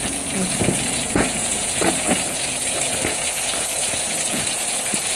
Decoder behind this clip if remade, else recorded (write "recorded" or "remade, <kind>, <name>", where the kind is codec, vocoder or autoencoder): remade, vocoder, Vocos